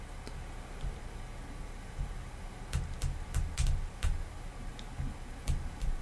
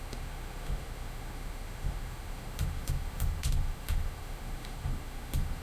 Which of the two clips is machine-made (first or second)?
second